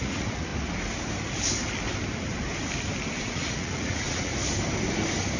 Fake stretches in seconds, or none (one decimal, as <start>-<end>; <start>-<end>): 0.0-0.5; 3.2-4.3